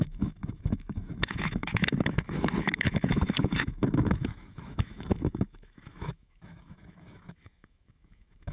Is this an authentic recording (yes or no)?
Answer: no